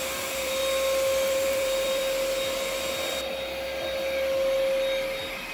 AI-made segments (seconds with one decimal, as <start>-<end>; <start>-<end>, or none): 0.0-0.6; 1.3-2.0